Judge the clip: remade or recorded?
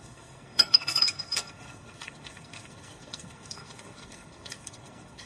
remade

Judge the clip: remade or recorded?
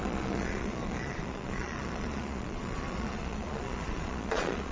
remade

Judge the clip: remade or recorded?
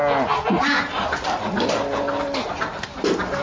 recorded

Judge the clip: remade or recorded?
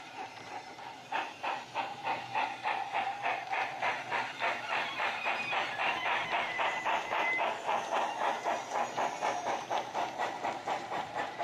remade